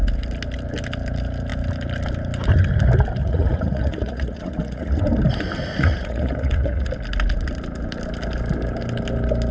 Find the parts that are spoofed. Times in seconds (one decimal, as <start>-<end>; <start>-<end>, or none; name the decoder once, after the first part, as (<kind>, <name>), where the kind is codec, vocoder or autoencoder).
3.2-5.0 (vocoder, Vocos); 5.7-6.9